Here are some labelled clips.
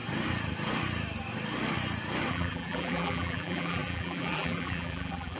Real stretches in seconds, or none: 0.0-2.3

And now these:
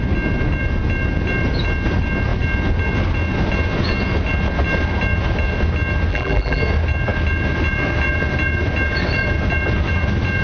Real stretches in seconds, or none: 0.0-6.1; 6.6-10.4

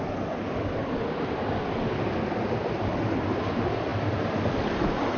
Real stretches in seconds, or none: 0.0-5.2

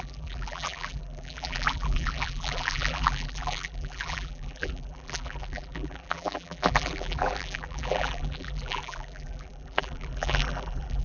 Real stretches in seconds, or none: none